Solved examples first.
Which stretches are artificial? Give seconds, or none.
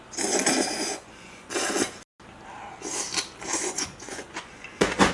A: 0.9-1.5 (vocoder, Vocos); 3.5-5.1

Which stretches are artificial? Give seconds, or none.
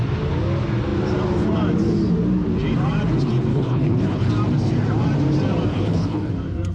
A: 3.5-4.3 (codec, HILCodec); 5.7-6.3